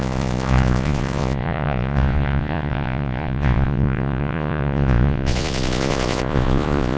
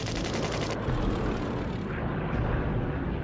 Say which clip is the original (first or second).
second